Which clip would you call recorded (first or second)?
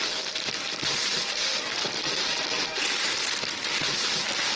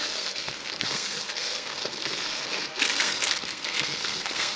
first